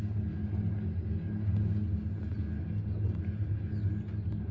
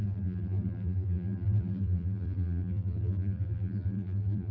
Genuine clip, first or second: first